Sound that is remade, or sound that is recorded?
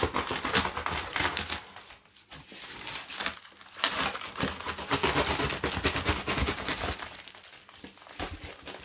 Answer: recorded